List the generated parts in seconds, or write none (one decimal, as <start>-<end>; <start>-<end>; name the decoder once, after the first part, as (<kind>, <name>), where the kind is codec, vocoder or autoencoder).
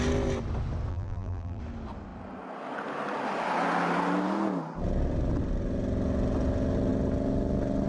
0.9-1.6 (vocoder, BigVGAN v2)